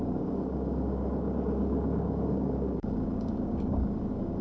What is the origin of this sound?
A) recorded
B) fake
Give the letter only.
B